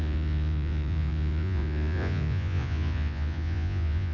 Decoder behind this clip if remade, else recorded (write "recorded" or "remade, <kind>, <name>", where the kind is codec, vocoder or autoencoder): remade, vocoder, Vocos